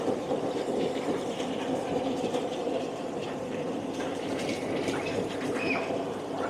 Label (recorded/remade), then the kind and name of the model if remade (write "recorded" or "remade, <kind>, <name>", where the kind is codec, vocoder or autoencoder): remade, vocoder, BigVGAN v2